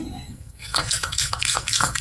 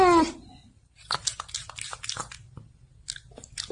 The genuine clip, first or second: second